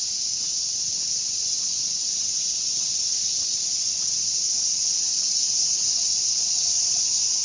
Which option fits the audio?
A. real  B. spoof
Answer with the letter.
B